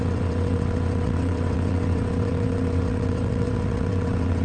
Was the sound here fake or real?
fake